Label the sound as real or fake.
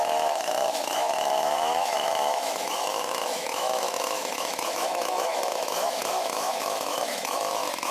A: fake